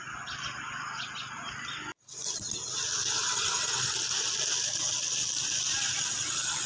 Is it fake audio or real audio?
real